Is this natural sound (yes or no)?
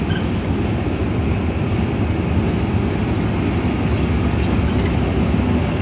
yes